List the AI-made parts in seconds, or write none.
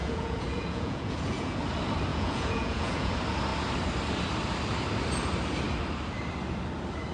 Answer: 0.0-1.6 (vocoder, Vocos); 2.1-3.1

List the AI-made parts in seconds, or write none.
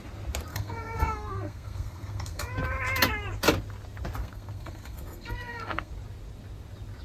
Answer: 0.5-2.5 (codec, SNAC); 4.2-5.9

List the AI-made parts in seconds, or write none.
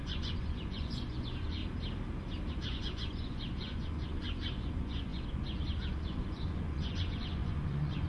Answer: 0.0-1.6 (vocoder, Vocos); 2.5-8.1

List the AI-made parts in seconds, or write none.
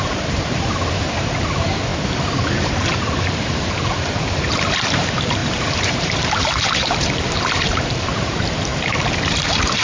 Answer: 0.0-1.9 (vocoder, BigVGAN v2); 2.8-8.7; 9.2-9.8